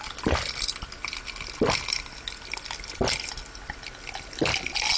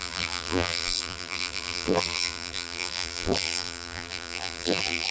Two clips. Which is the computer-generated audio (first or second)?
second